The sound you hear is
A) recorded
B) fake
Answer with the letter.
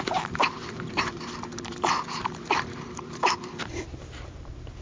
B